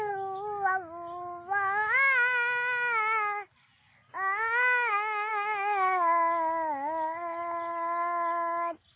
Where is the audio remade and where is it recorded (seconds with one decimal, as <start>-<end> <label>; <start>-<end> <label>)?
0.0-9.0 recorded